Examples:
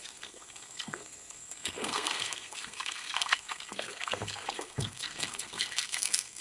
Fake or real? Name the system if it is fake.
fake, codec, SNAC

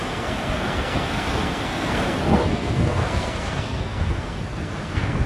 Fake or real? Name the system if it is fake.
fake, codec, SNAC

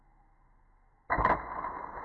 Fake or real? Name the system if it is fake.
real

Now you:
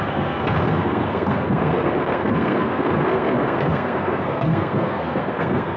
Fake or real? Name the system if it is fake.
fake, codec, SNAC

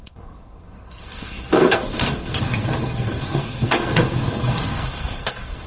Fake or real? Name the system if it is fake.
fake, codec, SNAC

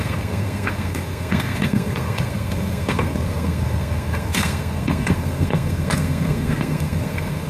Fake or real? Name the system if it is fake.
fake, codec, SNAC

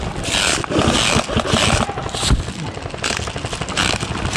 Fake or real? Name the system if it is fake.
real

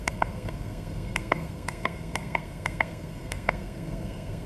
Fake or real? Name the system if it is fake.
fake, codec, SNAC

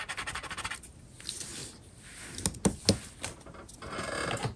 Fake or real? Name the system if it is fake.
real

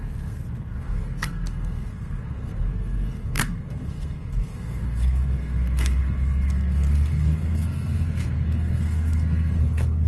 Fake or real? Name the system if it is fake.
fake, codec, SNAC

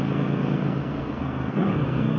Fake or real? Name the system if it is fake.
fake, codec, SNAC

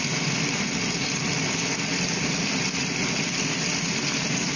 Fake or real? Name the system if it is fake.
real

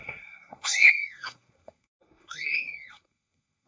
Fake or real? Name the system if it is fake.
fake, codec, SNAC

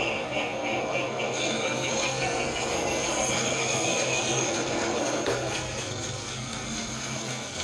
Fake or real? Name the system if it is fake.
fake, codec, SNAC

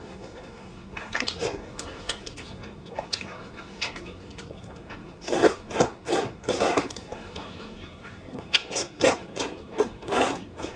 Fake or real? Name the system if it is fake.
fake, codec, SNAC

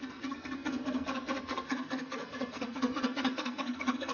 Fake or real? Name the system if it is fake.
fake, codec, SNAC